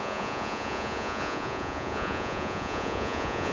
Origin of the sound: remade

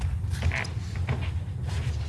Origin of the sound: recorded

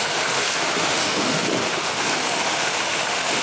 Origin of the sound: remade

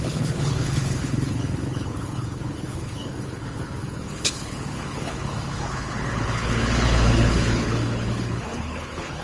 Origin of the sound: remade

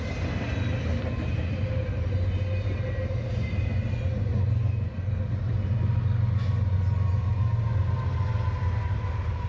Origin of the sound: recorded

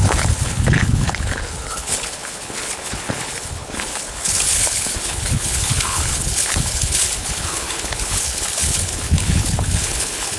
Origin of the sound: remade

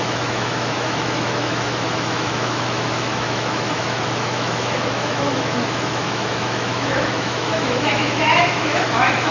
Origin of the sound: remade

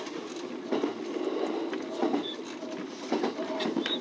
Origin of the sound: recorded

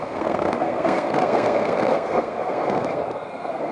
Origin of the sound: remade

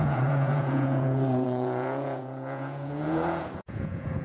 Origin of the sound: remade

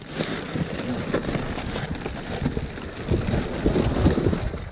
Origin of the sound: recorded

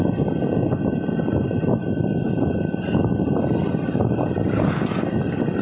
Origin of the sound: recorded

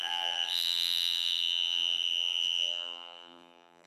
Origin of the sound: remade